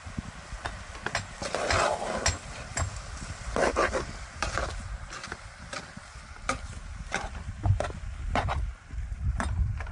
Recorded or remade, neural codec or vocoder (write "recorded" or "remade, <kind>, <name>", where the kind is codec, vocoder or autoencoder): recorded